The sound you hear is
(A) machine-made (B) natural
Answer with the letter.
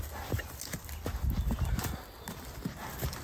B